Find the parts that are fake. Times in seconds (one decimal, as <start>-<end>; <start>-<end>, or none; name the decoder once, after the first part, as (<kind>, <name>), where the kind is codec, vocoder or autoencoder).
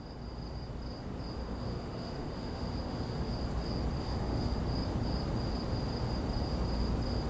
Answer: 1.4-3.3 (autoencoder, DAC-VAE); 3.9-4.6